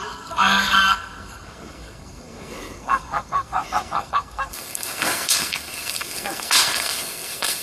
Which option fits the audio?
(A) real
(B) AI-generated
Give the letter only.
B